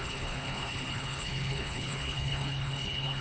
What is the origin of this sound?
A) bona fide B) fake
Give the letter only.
B